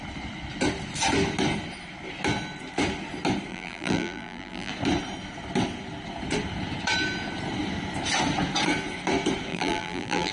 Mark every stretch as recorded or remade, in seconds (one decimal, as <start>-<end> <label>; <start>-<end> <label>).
0.0-3.5 recorded; 3.5-4.7 remade; 4.7-9.5 recorded; 9.5-10.3 remade